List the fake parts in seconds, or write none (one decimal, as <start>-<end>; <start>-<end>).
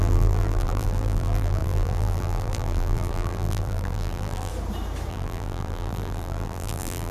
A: 0.0-4.5; 5.1-7.1